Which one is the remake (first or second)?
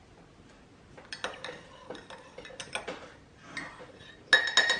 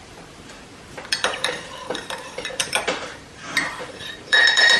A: second